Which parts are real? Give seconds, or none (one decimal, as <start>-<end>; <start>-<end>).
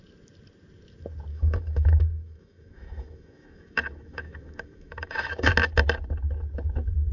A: 0.0-1.3; 5.5-7.1